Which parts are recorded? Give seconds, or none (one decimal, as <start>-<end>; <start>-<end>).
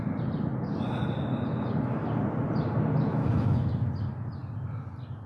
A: 0.0-3.1; 3.7-5.3